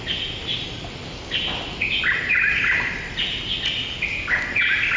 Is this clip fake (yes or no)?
no